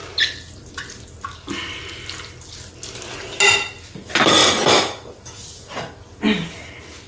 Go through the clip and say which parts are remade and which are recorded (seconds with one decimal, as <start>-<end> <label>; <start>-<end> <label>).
0.0-7.1 recorded